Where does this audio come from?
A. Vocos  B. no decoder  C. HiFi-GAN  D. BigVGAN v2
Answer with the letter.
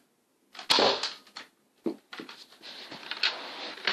B